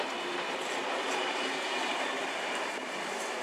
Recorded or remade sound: remade